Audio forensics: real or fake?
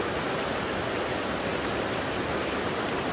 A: real